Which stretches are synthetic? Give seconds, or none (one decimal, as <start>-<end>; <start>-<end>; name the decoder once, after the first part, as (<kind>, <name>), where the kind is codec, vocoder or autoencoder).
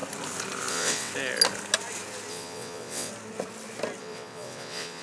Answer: 0.7-1.1 (vocoder, WaveNeXt); 2.3-3.1; 4.0-5.0